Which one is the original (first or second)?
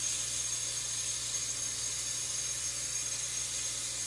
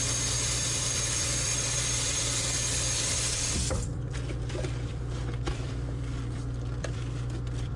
first